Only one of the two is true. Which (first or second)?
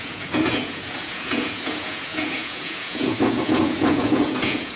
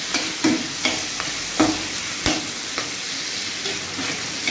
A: second